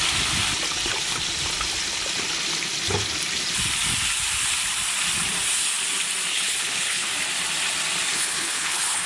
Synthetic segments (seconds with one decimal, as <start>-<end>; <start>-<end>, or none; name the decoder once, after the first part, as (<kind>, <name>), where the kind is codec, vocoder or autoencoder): 6.3-7.1 (codec, HILCodec); 8.1-9.1